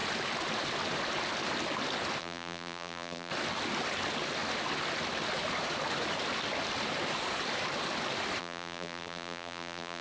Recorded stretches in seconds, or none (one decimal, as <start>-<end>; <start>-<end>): 0.0-2.2; 3.3-8.4

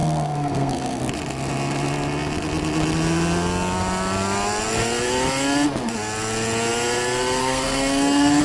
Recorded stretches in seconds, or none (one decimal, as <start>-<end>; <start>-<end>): 1.0-7.4